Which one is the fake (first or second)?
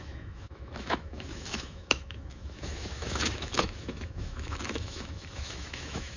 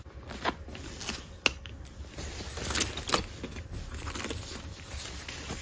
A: first